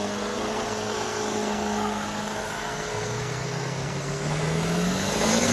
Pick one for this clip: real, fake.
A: fake